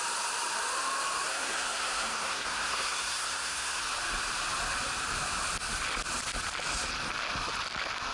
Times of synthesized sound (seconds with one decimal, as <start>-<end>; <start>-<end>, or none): 1.3-3.8